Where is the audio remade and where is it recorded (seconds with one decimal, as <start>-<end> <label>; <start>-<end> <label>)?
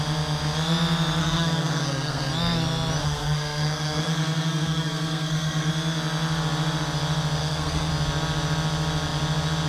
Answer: 0.0-1.2 recorded; 1.2-2.3 remade; 2.3-3.0 recorded; 3.0-5.7 remade; 5.7-7.4 recorded; 7.4-7.9 remade; 7.9-9.7 recorded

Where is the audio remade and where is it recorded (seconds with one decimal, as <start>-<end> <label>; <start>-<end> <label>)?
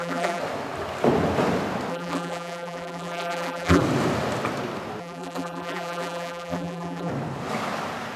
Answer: 0.0-0.4 remade; 0.4-1.9 recorded; 1.9-3.8 remade; 3.8-5.0 recorded; 5.0-7.1 remade; 7.1-8.2 recorded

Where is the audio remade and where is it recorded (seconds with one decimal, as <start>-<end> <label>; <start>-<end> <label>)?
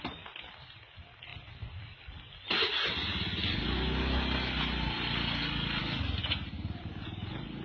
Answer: 0.0-7.6 recorded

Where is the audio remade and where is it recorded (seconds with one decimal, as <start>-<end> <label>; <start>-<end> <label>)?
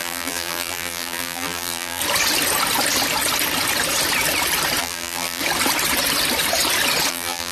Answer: 0.0-2.0 remade; 2.0-4.8 recorded; 4.8-5.4 remade; 5.4-7.1 recorded; 7.1-7.5 remade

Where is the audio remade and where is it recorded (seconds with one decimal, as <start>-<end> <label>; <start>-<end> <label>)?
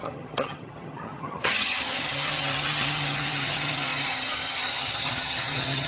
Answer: 0.0-5.9 remade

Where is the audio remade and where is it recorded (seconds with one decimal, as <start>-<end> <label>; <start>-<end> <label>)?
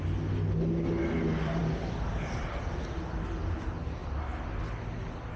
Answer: 0.0-4.0 recorded; 4.0-4.5 remade; 4.5-5.4 recorded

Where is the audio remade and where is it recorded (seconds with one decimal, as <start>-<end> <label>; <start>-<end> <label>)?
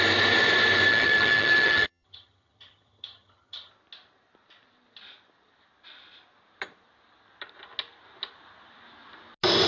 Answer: 0.0-0.9 recorded; 0.9-3.7 remade; 3.7-9.7 recorded